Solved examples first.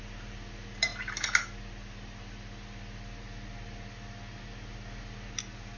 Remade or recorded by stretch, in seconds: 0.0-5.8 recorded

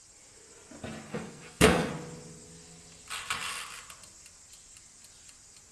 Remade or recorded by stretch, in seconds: 0.0-1.1 recorded; 1.1-1.9 remade; 1.9-5.7 recorded

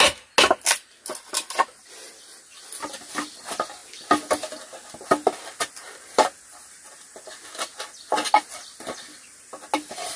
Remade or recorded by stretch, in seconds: 0.0-10.2 recorded

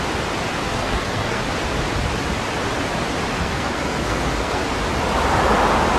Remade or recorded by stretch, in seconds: 0.0-0.6 recorded; 0.6-1.4 remade; 1.4-3.4 recorded; 3.4-4.6 remade; 4.6-6.0 recorded

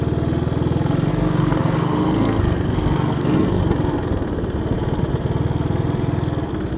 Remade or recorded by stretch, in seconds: 0.0-1.1 recorded; 1.1-3.6 remade; 3.6-6.8 recorded